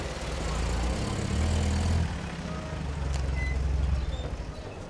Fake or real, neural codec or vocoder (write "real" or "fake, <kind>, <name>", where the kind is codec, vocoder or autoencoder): real